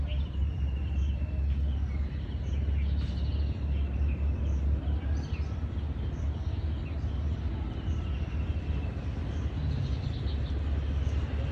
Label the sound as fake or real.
real